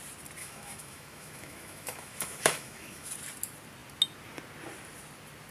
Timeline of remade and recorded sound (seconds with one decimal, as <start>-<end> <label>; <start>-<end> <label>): 0.0-0.4 recorded; 0.4-3.1 remade; 3.1-5.5 recorded